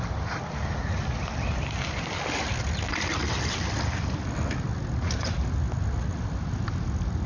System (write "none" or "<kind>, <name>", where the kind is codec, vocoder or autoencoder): none